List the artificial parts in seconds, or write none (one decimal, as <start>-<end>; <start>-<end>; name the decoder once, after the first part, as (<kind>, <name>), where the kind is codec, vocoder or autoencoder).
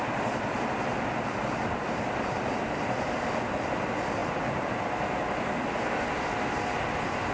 none